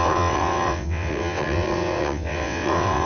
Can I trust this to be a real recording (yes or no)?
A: no